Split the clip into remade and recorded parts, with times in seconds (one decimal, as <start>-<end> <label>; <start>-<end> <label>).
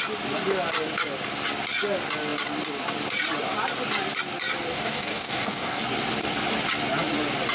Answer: 0.0-4.7 recorded; 4.7-5.8 remade; 5.8-7.5 recorded